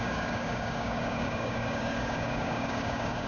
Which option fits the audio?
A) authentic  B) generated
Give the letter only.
B